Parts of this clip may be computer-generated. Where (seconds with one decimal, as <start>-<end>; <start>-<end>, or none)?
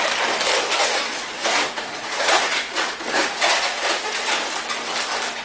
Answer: 1.1-4.3